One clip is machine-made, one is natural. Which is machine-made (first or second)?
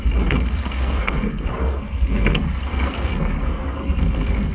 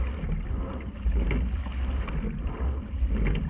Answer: first